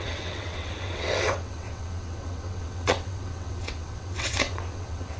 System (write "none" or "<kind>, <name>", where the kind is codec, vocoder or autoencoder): vocoder, WaveNeXt